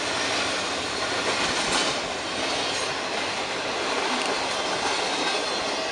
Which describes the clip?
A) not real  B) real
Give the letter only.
B